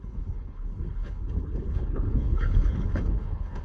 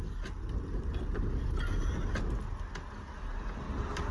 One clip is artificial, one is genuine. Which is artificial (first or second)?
first